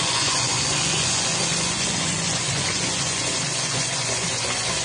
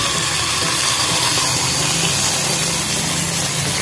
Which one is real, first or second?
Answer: second